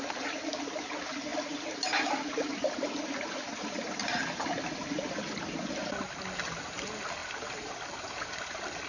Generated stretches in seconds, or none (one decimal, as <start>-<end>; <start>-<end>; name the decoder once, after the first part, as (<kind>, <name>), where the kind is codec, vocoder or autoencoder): none